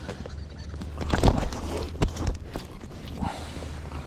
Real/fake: real